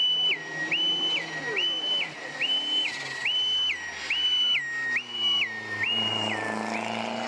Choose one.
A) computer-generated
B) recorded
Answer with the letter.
B